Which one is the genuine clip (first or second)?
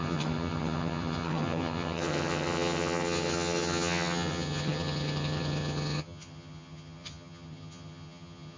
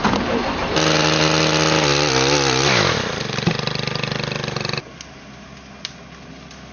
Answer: second